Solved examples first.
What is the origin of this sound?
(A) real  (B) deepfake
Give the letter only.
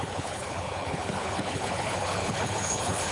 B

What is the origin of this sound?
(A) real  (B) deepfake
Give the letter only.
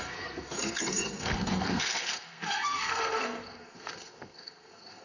B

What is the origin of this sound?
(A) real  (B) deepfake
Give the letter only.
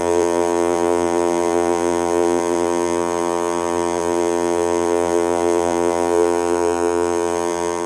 B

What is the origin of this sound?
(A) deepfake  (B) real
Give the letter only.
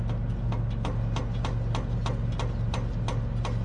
B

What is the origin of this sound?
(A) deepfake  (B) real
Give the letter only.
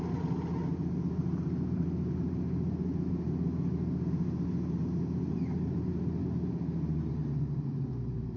B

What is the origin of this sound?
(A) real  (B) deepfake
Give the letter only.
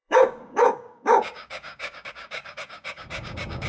B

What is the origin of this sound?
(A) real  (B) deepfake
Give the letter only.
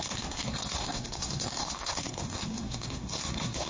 B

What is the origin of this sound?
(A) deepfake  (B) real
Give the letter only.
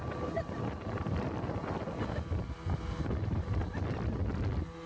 B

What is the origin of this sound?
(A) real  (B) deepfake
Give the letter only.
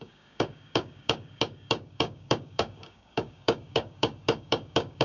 B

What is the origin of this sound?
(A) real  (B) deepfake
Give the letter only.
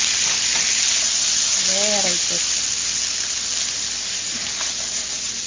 A